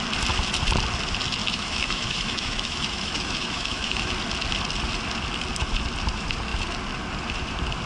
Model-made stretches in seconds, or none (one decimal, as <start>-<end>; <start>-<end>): 1.4-4.1